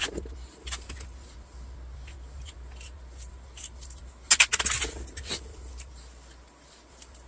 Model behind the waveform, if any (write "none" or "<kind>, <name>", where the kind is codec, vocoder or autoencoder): none